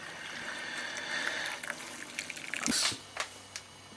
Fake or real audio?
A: real